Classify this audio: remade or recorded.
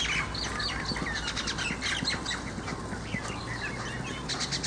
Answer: recorded